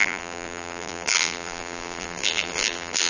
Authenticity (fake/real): fake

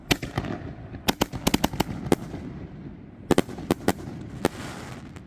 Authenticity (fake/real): real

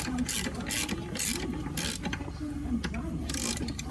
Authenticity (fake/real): real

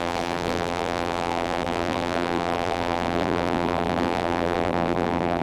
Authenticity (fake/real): fake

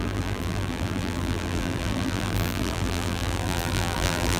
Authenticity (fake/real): fake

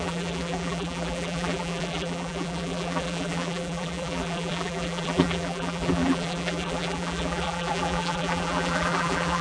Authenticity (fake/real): fake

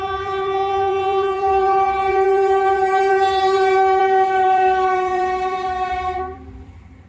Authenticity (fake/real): fake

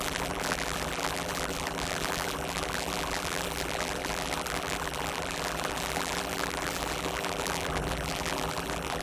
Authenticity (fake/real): fake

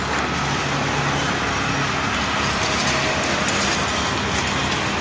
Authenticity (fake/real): real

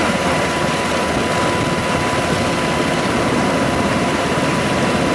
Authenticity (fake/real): real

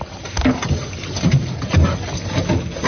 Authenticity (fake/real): real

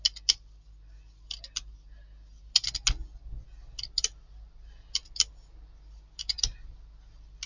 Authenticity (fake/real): real